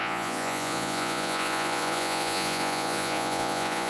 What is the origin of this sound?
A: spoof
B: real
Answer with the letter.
A